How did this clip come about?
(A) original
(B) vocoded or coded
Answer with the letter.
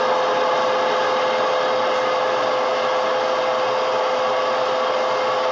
A